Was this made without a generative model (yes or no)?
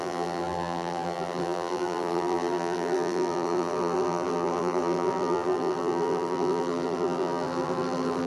no